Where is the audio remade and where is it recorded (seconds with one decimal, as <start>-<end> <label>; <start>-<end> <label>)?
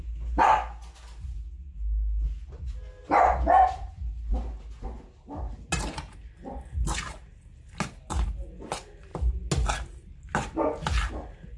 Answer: 0.0-11.6 recorded